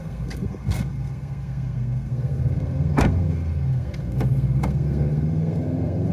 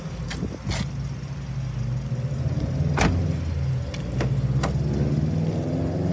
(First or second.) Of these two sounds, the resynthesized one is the first